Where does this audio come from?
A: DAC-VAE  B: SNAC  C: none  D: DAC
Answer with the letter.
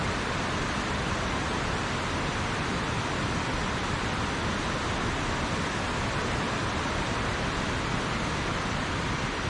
C